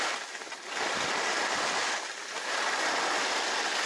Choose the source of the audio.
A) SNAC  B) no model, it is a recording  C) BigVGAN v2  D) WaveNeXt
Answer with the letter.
B